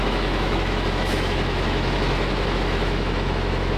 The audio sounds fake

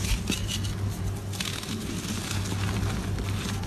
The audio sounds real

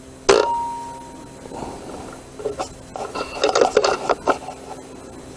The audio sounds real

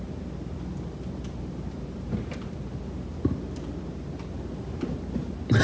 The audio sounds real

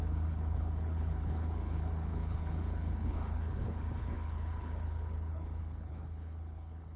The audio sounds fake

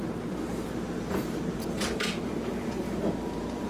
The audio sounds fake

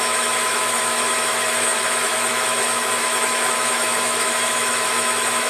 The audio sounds fake